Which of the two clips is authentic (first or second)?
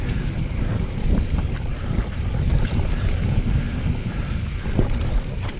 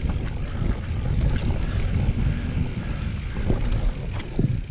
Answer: second